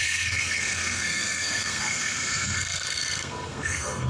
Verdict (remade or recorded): remade